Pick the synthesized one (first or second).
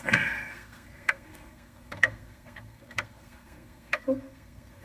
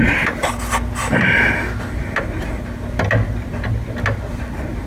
first